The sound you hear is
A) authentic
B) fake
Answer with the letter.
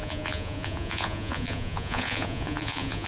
B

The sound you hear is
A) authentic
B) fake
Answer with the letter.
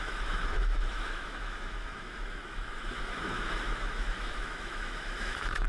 B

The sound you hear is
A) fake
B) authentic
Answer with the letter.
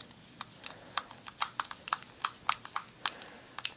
B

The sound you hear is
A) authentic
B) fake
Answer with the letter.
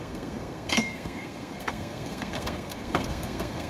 B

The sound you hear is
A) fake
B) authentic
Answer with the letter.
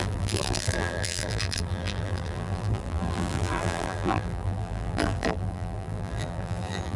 A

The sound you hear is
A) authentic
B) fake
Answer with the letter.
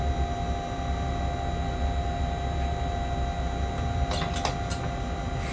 A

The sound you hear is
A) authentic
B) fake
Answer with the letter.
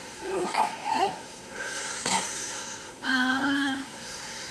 B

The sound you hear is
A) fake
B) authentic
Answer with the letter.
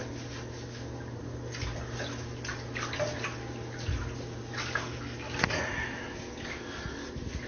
B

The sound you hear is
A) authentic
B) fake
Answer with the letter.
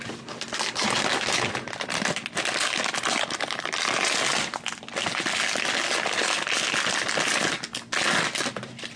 A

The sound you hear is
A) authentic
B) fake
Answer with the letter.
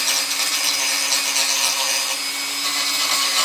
A